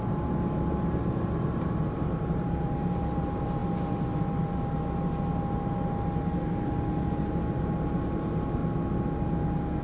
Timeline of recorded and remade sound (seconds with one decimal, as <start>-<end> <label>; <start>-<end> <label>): 0.0-3.6 remade; 3.6-7.3 recorded; 7.3-8.6 remade; 8.6-9.8 recorded